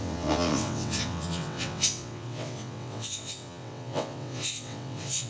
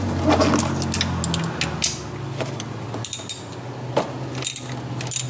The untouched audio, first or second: second